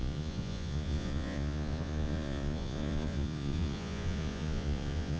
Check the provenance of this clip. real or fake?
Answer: fake